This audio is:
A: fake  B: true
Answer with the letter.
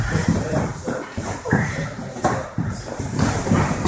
A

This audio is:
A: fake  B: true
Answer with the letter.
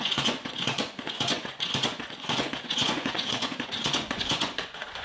A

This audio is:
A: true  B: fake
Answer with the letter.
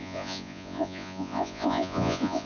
B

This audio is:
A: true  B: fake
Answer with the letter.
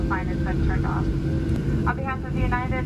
A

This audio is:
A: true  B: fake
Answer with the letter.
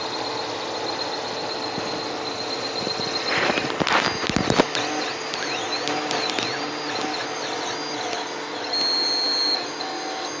A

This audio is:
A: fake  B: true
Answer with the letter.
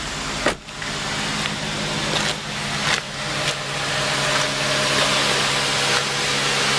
B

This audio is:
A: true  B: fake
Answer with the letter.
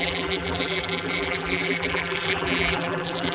B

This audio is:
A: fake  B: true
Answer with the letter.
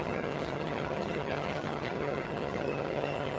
A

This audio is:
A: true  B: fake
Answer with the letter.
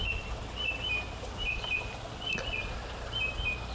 A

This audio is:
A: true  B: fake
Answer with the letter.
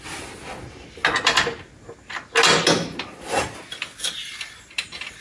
A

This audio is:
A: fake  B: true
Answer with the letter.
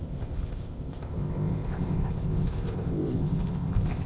A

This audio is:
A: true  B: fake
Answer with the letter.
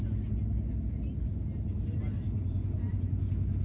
A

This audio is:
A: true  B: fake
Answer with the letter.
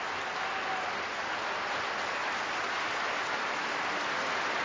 A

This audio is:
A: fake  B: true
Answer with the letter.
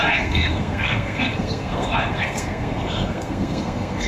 A